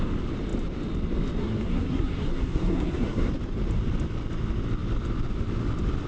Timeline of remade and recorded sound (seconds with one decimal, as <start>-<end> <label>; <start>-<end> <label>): 0.0-1.4 recorded; 1.4-3.3 remade; 3.3-6.1 recorded